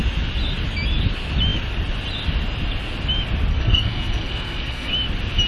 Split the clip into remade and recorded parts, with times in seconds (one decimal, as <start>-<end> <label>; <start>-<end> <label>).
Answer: 0.0-3.5 recorded; 3.5-4.9 remade; 4.9-5.5 recorded